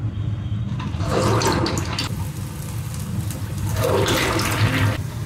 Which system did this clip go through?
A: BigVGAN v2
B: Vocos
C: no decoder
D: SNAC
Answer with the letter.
C